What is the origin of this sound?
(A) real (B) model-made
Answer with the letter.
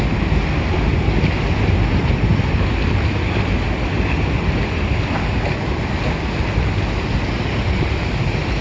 A